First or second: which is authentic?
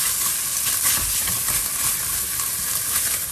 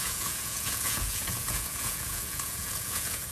first